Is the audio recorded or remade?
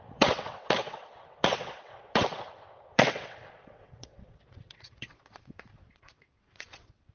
remade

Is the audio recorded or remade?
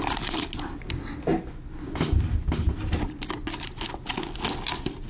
recorded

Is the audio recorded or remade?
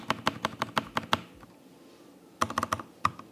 recorded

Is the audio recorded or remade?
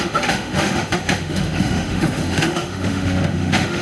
remade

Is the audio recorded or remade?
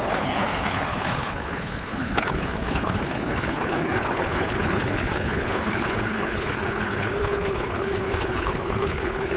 remade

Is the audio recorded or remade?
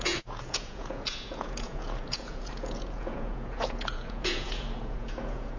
remade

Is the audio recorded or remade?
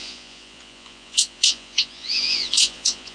remade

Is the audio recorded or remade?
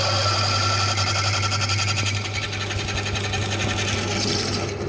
recorded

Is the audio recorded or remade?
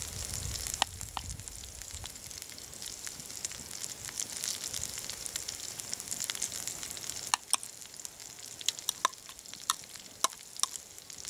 recorded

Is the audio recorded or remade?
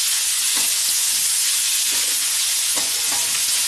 remade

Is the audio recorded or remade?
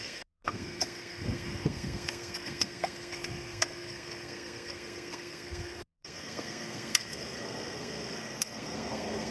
remade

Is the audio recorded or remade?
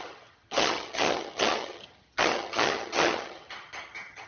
remade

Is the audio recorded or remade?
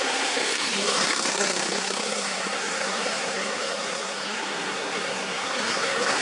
remade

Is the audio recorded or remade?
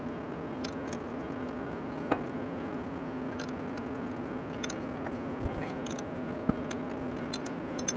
recorded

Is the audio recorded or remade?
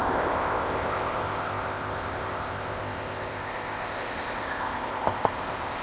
remade